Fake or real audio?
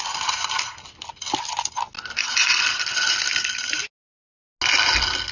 real